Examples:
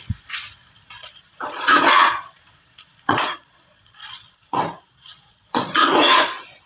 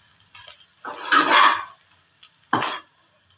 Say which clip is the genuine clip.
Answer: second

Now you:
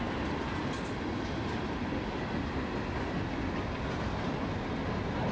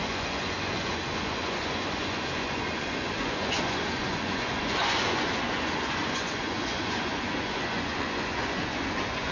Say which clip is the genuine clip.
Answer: first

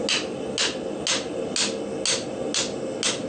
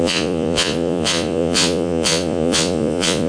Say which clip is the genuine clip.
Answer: first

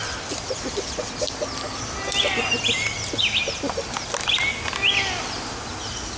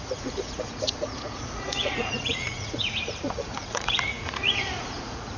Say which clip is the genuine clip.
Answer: first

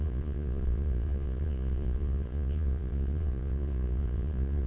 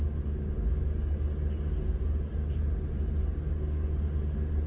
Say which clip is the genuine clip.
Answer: second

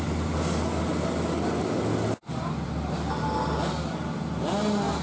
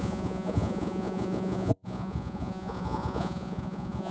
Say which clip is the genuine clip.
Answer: first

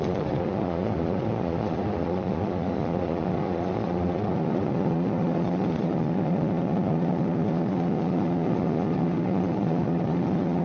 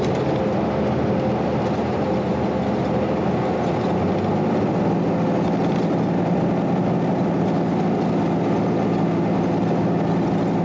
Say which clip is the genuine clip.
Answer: second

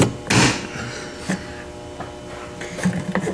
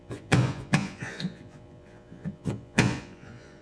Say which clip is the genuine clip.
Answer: first